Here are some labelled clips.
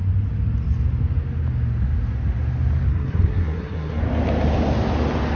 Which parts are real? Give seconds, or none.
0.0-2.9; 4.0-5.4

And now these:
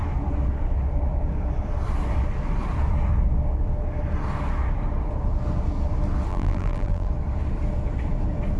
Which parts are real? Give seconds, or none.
0.0-6.3; 7.1-8.6

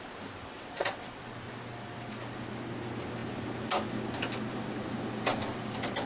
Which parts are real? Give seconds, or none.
0.0-0.4; 1.2-6.1

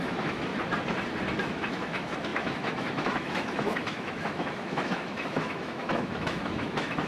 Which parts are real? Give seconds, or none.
0.5-1.4

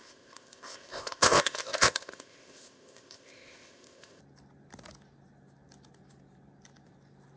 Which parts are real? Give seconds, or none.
4.2-7.4

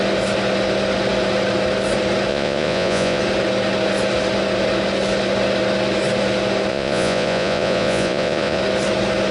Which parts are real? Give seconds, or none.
0.0-2.3; 3.2-6.7; 8.6-9.3

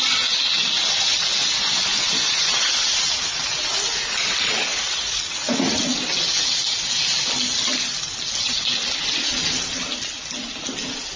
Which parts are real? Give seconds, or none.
0.0-4.7; 5.8-11.2